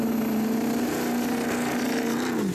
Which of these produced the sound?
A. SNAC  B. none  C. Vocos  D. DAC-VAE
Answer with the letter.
B